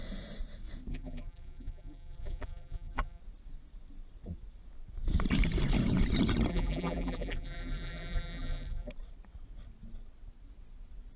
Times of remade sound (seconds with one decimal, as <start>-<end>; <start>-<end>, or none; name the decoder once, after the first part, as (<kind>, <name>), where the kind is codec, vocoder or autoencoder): 0.9-3.2 (vocoder, BigVGAN v2); 6.5-8.9